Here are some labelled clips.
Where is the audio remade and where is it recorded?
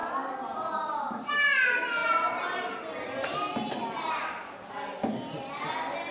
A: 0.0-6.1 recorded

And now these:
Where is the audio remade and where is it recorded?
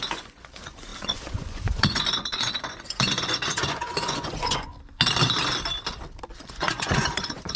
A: 0.0-4.7 remade; 4.7-6.4 recorded; 6.4-7.6 remade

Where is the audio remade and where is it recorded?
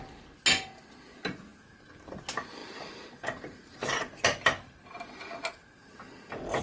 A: 0.0-6.6 recorded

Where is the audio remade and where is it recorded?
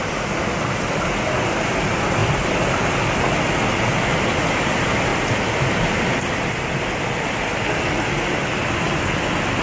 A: 0.0-9.6 recorded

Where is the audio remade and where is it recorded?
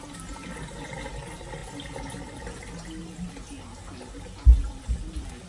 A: 0.0-5.5 recorded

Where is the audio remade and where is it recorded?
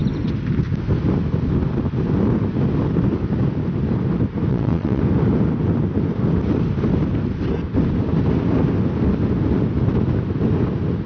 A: 0.0-4.5 recorded; 4.5-5.0 remade; 5.0-11.1 recorded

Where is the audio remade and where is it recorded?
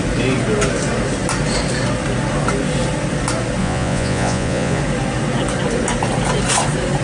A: 0.0-3.6 recorded; 3.6-4.8 remade; 4.8-7.0 recorded